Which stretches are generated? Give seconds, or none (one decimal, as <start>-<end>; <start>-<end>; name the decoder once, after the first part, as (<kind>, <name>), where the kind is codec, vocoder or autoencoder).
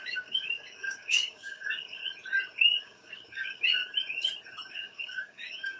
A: 0.0-2.0 (codec, DAC); 2.8-3.8; 4.7-5.8